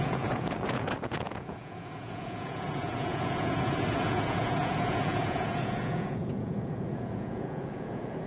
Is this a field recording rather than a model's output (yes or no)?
no